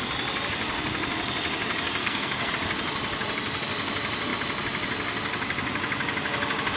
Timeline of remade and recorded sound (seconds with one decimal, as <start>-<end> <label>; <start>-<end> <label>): 0.0-2.0 recorded; 2.0-2.5 remade; 2.5-6.8 recorded